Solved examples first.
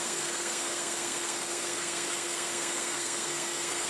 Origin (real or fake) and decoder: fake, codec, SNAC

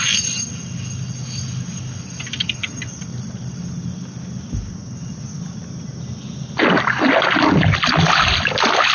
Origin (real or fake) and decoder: real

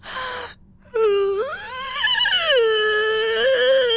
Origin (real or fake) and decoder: real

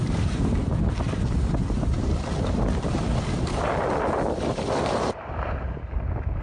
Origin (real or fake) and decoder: real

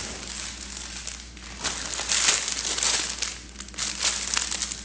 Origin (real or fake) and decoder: real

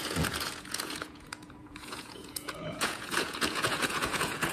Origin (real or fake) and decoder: fake, vocoder, Vocos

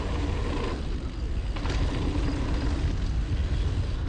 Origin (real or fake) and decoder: real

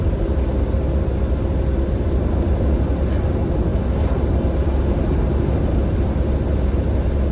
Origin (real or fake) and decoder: real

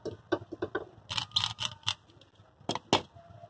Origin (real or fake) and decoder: real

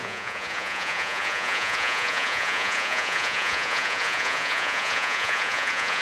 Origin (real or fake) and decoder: fake, vocoder, Vocos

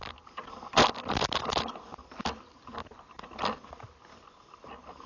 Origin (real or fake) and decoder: real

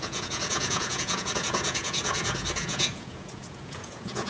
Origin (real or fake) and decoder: fake, vocoder, Vocos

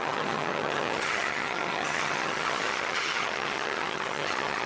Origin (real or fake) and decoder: fake, vocoder, HiFi-GAN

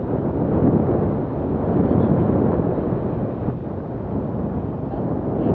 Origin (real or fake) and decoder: real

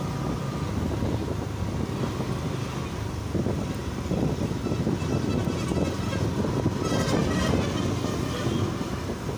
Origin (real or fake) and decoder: real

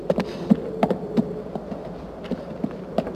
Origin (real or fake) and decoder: real